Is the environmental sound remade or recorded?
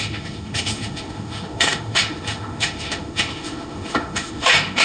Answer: remade